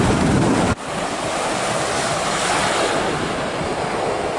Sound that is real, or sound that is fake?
real